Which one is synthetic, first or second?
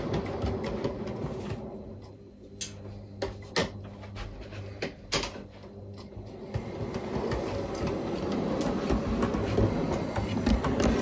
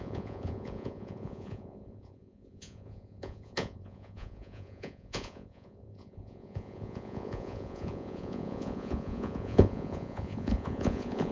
second